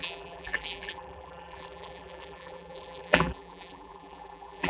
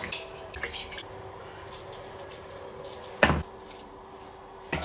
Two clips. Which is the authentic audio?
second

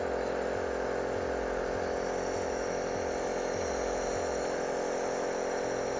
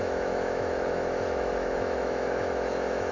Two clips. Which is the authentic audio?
first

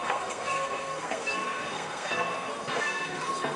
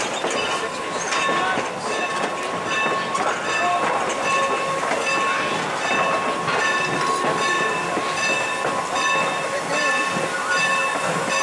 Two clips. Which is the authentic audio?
second